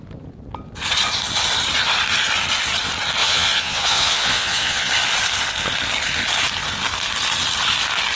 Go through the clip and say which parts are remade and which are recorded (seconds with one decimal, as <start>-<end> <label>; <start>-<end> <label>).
0.0-3.2 recorded; 3.2-4.9 remade; 4.9-8.2 recorded